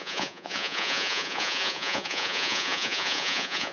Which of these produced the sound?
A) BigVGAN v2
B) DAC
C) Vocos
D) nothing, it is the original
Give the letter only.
C